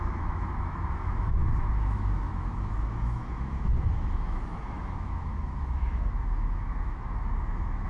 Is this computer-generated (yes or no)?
yes